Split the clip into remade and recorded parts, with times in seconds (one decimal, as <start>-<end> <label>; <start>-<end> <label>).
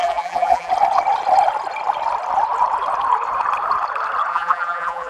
0.0-0.7 remade; 0.7-4.3 recorded; 4.3-5.1 remade